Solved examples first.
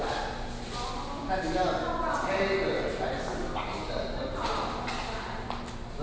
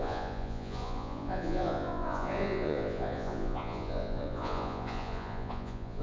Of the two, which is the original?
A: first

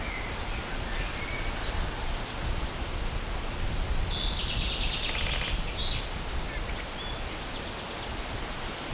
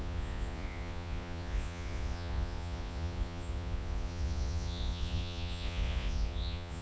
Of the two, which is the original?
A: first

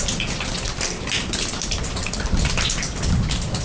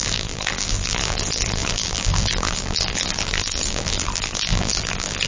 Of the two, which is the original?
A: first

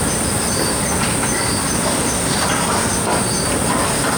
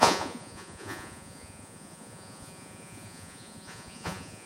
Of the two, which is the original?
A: first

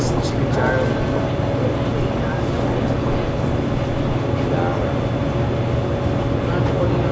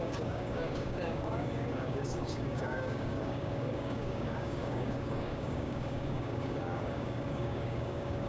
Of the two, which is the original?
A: first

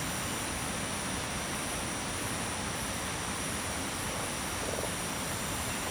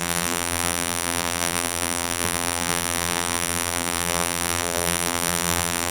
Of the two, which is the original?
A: first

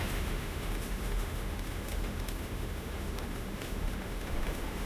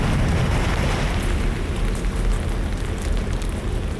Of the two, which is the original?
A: second